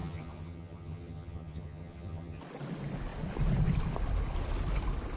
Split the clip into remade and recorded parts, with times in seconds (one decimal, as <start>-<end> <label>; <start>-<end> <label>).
0.0-2.4 remade; 2.4-5.2 recorded